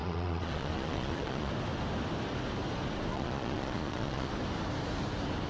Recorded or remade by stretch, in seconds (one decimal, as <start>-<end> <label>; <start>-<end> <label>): 0.0-1.5 remade; 1.5-3.1 recorded; 3.1-4.3 remade; 4.3-5.5 recorded